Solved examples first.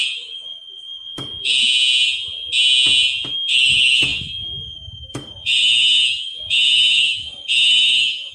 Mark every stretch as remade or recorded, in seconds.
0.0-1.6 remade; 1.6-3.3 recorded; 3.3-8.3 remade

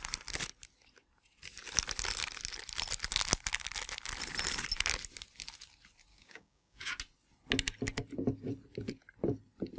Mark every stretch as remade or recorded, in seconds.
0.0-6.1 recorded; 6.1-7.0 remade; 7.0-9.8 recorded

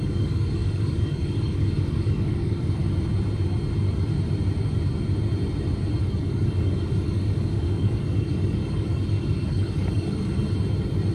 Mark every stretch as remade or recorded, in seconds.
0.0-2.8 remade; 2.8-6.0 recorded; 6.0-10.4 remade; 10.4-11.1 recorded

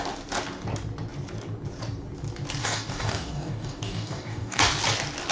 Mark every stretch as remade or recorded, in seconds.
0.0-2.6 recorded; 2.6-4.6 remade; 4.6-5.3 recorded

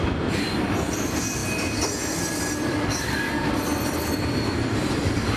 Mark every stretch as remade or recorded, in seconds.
0.0-2.7 recorded; 2.7-3.3 remade; 3.3-5.4 recorded